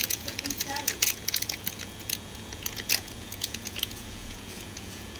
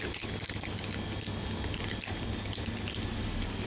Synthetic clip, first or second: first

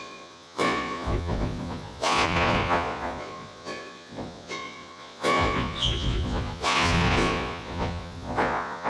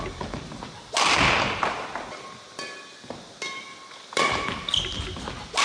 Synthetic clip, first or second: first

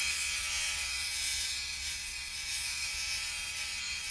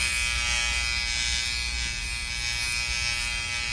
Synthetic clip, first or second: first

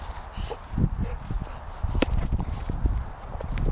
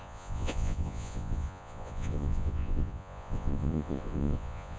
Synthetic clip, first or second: second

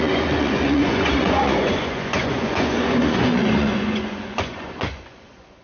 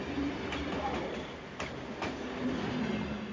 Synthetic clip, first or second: first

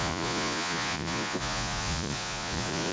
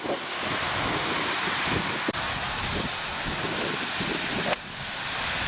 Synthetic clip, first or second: first